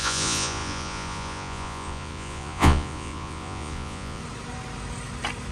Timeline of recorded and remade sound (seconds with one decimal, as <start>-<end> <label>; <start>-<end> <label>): 0.0-4.2 remade; 4.2-5.5 recorded